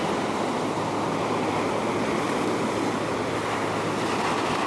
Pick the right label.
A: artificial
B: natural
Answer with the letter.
B